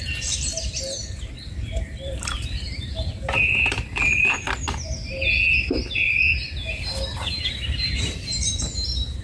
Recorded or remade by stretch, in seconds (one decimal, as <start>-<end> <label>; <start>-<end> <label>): 0.0-6.2 remade; 6.2-7.3 recorded; 7.3-9.2 remade